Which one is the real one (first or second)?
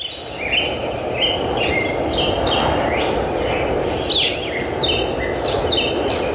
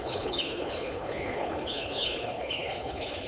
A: first